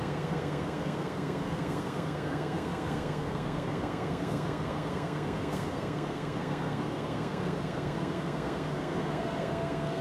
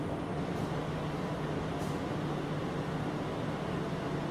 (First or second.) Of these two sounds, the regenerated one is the first